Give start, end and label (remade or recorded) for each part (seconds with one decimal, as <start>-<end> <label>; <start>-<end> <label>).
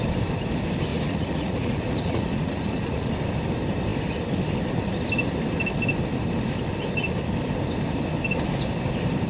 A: 0.0-0.9 recorded; 0.9-3.1 remade; 3.1-9.3 recorded